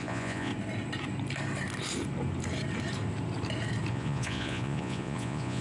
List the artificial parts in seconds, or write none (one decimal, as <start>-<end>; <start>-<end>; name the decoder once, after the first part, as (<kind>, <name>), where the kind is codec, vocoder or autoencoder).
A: 0.0-0.5 (vocoder, Vocos); 3.9-5.6